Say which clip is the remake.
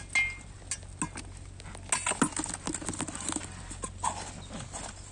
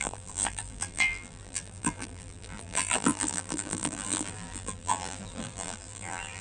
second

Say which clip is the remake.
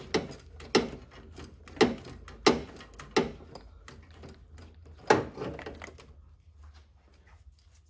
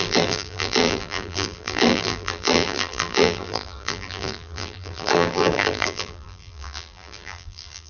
second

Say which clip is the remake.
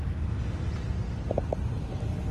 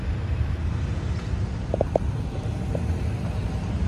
second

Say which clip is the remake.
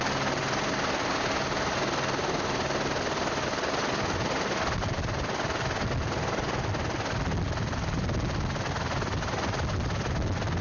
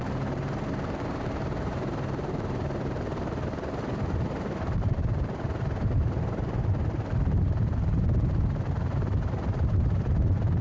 second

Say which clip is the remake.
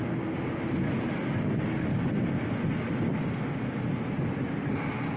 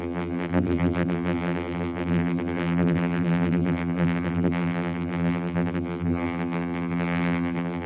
second